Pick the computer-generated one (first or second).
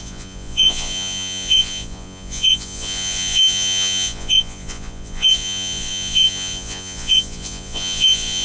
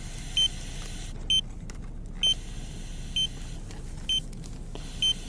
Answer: first